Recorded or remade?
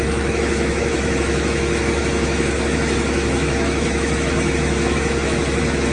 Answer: remade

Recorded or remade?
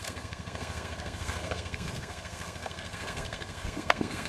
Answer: remade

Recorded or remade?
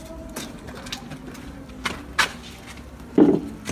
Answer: recorded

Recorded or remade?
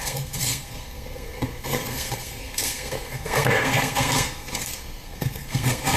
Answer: remade